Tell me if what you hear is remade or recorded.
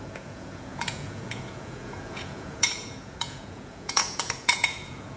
remade